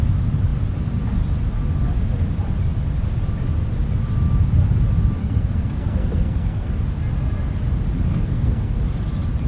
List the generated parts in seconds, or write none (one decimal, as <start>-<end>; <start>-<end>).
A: 5.2-6.7; 8.1-8.8